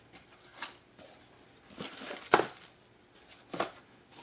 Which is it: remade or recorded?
recorded